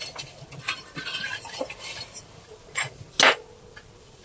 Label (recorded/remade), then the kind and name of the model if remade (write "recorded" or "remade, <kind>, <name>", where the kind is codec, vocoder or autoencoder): recorded